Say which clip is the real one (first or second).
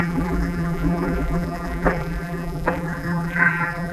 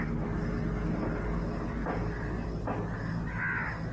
second